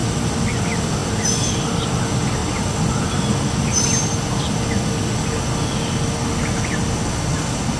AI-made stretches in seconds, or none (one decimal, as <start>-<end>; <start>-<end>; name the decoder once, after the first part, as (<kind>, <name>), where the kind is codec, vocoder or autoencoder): none